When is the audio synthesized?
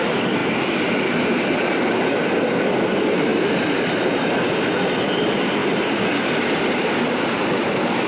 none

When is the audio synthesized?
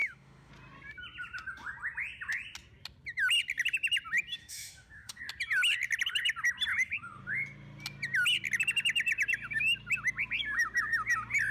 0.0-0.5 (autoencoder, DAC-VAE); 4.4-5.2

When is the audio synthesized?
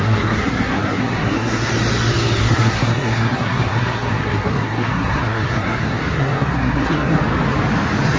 0.0-1.7 (codec, SNAC); 2.4-7.2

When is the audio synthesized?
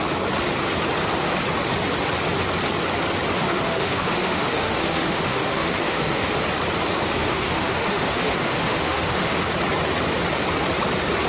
3.4-6.3 (autoencoder, DAC-VAE); 7.2-9.5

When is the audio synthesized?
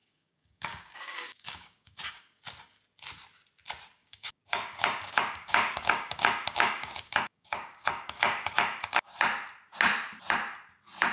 0.0-2.4 (codec, DAC); 4.0-9.1